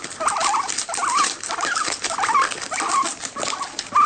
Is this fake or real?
fake